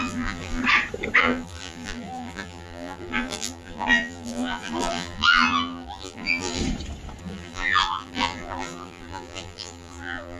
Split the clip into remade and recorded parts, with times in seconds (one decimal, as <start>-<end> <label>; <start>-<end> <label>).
0.0-0.6 remade; 0.6-1.2 recorded; 1.2-6.6 remade; 6.6-7.2 recorded; 7.2-10.4 remade